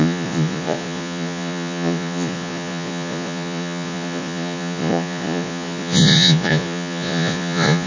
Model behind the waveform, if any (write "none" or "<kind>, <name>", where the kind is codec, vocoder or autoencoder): vocoder, Vocos